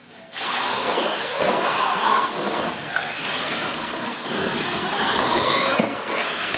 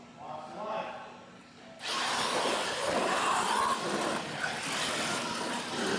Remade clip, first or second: first